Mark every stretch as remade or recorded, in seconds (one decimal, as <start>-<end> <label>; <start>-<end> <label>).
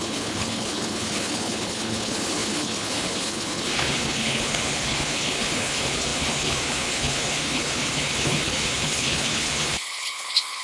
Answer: 0.0-10.6 remade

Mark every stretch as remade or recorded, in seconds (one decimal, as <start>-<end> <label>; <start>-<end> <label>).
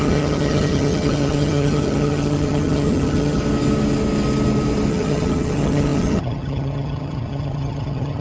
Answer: 0.0-3.4 remade; 3.4-4.9 recorded; 4.9-8.2 remade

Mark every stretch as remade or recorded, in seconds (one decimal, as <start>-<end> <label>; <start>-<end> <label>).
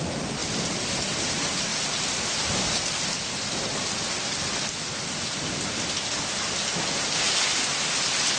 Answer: 0.0-8.4 recorded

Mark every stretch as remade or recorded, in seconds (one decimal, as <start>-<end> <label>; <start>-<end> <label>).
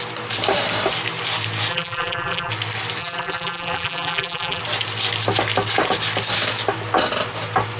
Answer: 0.0-1.7 recorded; 1.7-2.5 remade; 2.5-3.0 recorded; 3.0-4.6 remade; 4.6-7.8 recorded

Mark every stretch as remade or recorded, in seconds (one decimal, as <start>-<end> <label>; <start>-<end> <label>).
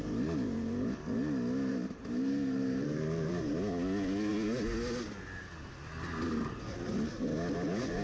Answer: 0.0-1.7 recorded; 1.7-3.5 remade; 3.5-8.0 recorded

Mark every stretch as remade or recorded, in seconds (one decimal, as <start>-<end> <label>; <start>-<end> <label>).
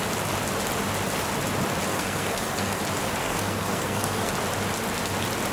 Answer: 0.0-1.9 recorded; 1.9-2.8 remade; 2.8-3.2 recorded; 3.2-4.3 remade; 4.3-5.5 recorded